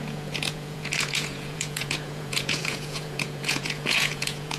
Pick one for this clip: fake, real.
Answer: fake